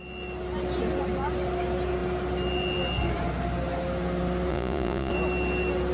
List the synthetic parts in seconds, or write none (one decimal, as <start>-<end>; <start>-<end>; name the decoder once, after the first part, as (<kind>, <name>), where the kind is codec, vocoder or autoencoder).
4.5-5.1 (vocoder, Vocos)